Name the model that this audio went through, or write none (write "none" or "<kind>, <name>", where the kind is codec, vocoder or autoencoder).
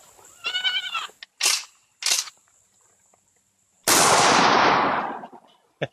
none